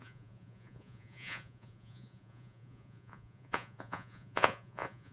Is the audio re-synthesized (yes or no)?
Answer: yes